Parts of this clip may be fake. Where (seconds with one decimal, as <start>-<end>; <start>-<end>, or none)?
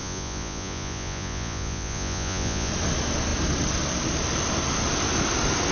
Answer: 0.0-2.7